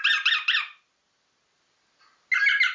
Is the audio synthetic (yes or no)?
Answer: no